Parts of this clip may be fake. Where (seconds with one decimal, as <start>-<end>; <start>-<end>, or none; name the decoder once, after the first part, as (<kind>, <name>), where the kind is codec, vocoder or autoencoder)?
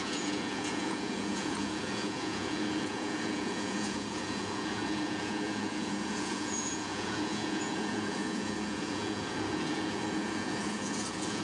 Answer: 0.0-11.4 (vocoder, Vocos)